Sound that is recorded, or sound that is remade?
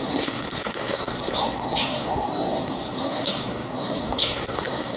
remade